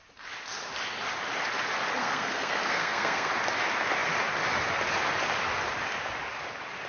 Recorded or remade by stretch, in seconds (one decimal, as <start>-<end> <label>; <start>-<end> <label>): 0.0-2.0 recorded; 2.0-3.3 remade; 3.3-6.9 recorded